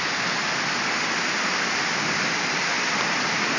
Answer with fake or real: real